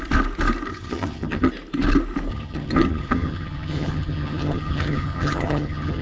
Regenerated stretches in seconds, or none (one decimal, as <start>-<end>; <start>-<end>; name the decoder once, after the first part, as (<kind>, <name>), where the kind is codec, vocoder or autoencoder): 0.7-1.5 (vocoder, HiFi-GAN); 2.3-6.0